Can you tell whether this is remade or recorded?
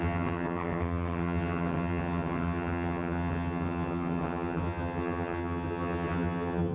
remade